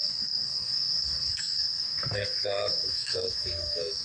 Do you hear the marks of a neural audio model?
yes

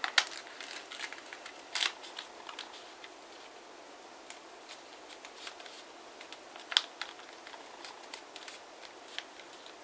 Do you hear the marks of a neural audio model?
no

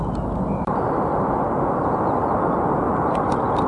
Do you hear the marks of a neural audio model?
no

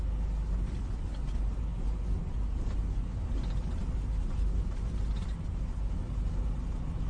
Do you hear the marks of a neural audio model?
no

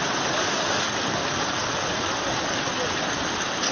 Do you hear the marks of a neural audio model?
no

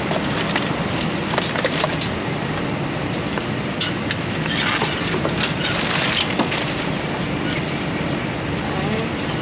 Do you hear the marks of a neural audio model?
no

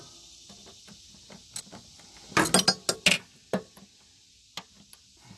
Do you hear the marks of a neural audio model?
no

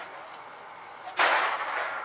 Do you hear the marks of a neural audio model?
no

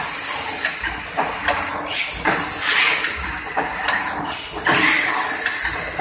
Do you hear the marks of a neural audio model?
no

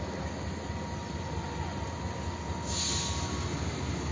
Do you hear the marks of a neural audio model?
no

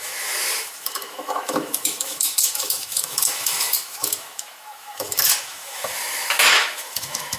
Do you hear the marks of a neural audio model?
yes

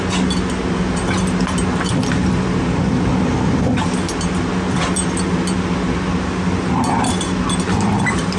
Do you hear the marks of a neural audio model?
no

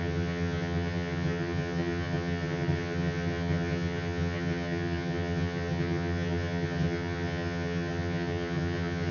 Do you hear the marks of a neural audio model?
yes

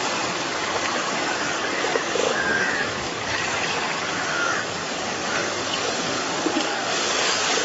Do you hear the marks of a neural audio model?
yes